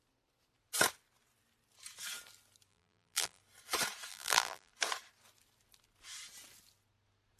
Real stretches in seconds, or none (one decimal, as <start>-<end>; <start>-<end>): 0.0-2.7; 3.4-4.1; 4.7-7.4